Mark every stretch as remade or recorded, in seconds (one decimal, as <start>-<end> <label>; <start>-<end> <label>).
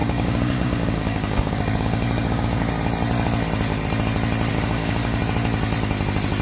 0.0-2.7 remade; 2.7-4.5 recorded; 4.5-5.2 remade; 5.2-6.4 recorded